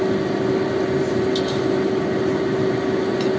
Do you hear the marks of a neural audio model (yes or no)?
no